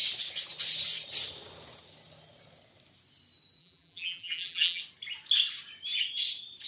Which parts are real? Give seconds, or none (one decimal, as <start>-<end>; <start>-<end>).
0.0-3.6; 4.8-6.7